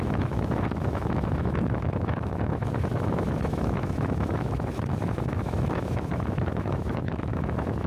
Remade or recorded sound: remade